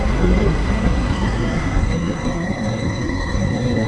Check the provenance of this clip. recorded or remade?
remade